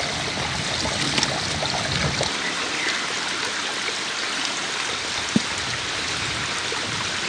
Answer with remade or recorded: recorded